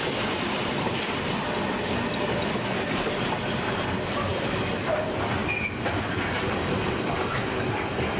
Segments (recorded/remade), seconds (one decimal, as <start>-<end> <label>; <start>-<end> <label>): 0.0-4.3 recorded; 4.3-5.0 remade; 5.0-8.2 recorded